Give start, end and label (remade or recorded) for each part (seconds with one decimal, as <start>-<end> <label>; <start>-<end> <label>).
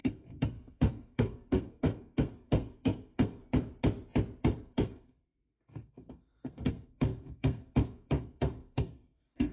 0.0-3.4 remade; 3.4-4.4 recorded; 4.4-9.5 remade